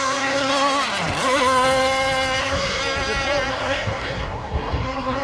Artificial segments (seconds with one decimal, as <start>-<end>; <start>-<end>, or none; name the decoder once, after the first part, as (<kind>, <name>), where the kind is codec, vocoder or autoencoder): 0.0-0.5 (codec, SNAC); 2.4-2.8; 3.5-5.2